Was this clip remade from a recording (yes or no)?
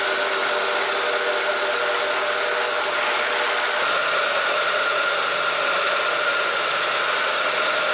no